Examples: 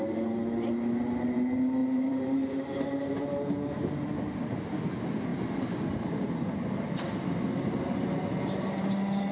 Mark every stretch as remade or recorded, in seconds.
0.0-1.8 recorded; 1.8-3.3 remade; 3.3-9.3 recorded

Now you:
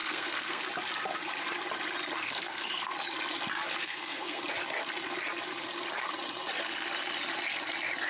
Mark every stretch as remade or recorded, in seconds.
0.0-0.6 remade; 0.6-2.2 recorded; 2.2-2.9 remade; 2.9-3.8 recorded; 3.8-4.4 remade; 4.4-8.1 recorded

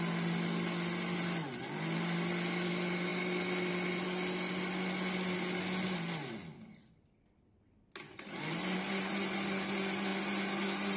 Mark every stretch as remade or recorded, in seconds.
0.0-11.0 recorded

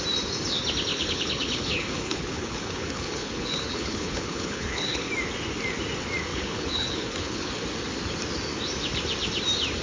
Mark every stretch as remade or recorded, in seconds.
0.0-0.9 recorded; 0.9-5.1 remade; 5.1-6.3 recorded; 6.3-7.5 remade; 7.5-9.8 recorded

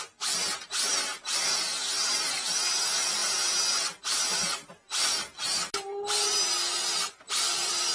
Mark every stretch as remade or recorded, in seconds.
0.0-7.9 recorded

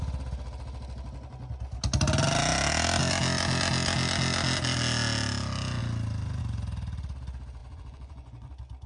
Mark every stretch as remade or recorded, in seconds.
0.0-7.6 recorded; 7.6-8.5 remade; 8.5-8.9 recorded

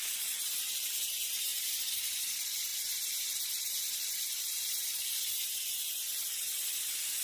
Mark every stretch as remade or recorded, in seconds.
0.0-1.5 recorded; 1.5-2.1 remade; 2.1-7.2 recorded

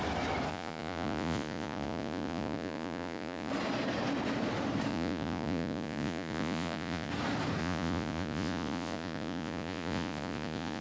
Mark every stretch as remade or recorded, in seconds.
0.0-0.5 recorded; 0.5-3.5 remade; 3.5-4.9 recorded; 4.9-7.1 remade; 7.1-7.6 recorded; 7.6-10.8 remade